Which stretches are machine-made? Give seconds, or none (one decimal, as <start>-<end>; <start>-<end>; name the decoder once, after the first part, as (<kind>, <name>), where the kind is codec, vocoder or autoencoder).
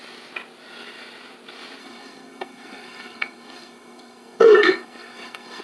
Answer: 1.8-5.6 (codec, SNAC)